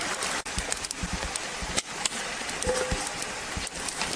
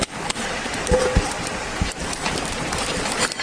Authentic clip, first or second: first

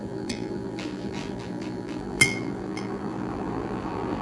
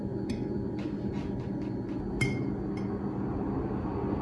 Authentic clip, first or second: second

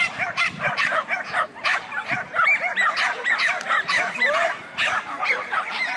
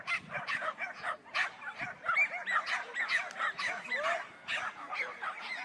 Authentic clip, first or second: second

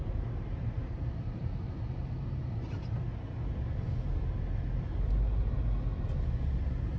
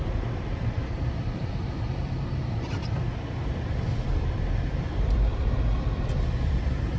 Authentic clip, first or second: first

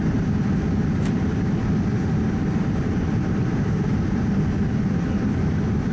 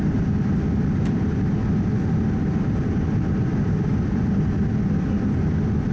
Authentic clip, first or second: second